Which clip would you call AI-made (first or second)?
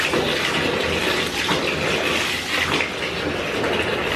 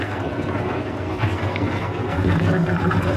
second